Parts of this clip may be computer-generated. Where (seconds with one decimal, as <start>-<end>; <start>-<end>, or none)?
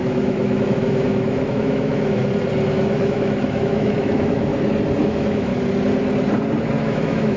0.0-2.2; 2.7-4.5; 5.0-5.5; 6.8-7.4